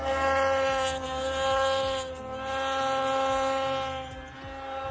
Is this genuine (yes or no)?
yes